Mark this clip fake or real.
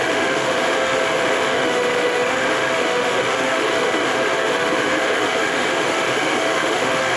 fake